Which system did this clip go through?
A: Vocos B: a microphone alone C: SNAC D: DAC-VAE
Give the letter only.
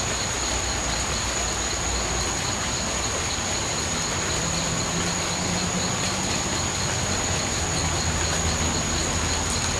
B